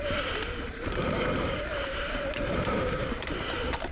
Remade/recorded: remade